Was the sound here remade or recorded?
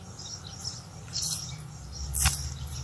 recorded